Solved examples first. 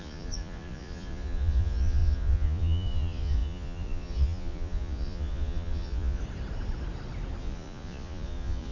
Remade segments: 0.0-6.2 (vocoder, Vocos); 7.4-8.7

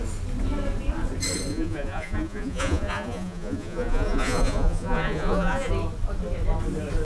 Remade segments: 1.5-5.7 (vocoder, Vocos)

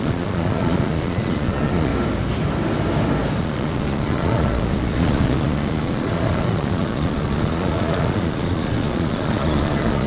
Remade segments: 0.0-1.9 (vocoder, Vocos); 3.4-10.1